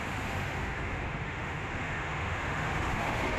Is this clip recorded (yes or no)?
no